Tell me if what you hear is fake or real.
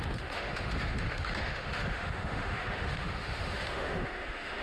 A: fake